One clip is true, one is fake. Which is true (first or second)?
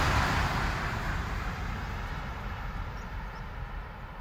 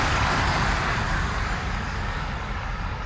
first